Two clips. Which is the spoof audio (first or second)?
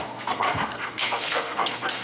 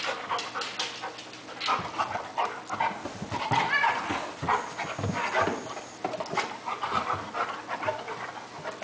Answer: first